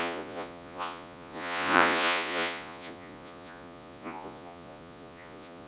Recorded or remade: remade